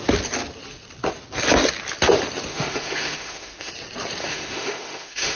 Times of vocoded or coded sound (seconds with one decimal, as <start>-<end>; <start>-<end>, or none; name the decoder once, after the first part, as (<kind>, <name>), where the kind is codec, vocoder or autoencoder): 2.5-3.7 (autoencoder, DAC-VAE); 4.2-5.4